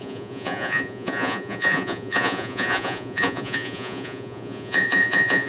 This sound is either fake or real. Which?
fake